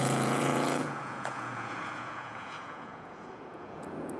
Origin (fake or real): fake